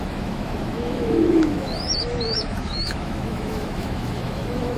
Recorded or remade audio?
remade